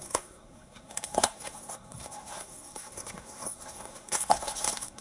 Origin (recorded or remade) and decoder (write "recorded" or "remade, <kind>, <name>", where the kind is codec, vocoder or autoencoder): remade, codec, SNAC